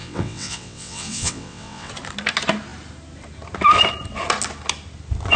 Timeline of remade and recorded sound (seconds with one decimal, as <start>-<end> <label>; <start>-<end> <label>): 0.0-1.9 remade; 1.9-5.4 recorded